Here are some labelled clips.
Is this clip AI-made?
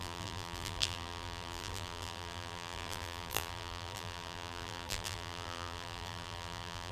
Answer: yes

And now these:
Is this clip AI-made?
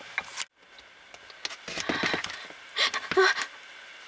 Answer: no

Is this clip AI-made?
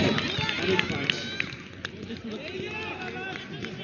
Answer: no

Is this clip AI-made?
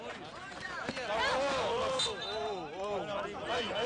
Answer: no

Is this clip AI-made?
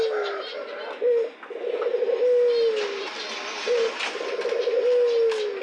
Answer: no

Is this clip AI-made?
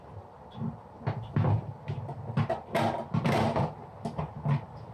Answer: no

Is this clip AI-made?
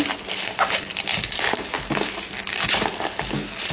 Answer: no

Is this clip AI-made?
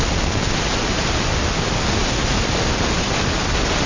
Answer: no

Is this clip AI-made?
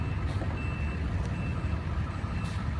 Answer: no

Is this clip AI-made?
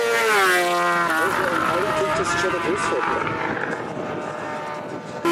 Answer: no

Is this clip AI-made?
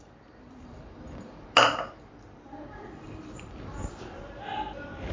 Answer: yes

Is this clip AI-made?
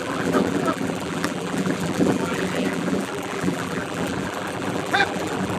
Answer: yes